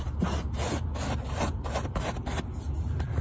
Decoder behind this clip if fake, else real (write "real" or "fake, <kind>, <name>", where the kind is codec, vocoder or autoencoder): real